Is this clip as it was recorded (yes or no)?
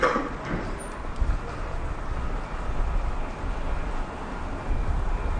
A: yes